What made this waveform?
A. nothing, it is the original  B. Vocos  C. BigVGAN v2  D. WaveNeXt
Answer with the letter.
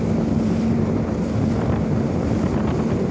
C